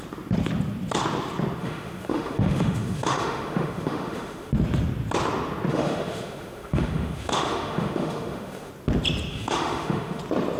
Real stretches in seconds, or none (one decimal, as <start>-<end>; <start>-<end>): 0.0-1.6; 4.5-5.7; 8.7-9.3; 10.2-10.6